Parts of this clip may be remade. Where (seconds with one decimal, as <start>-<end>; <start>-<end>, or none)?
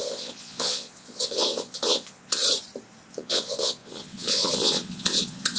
0.0-2.4; 3.1-5.6